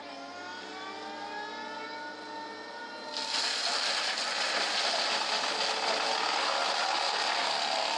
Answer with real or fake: real